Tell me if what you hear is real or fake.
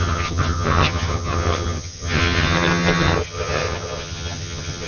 fake